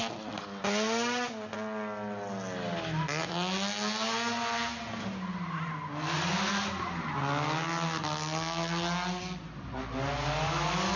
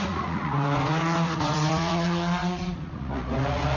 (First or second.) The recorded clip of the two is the first